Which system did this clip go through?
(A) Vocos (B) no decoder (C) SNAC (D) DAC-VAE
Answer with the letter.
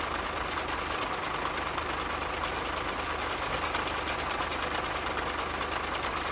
B